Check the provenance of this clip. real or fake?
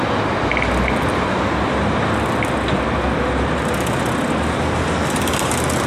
real